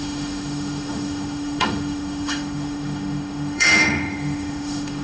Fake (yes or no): yes